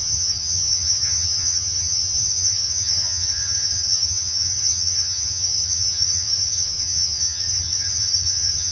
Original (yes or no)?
no